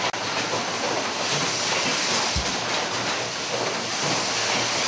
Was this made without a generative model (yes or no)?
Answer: yes